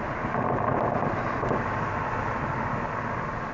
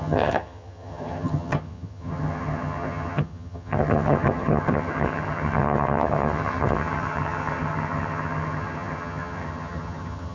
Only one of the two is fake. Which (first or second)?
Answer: second